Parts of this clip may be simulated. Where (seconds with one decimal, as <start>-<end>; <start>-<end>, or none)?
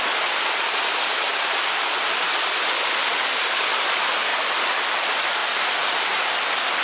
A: 0.0-4.3; 5.0-6.8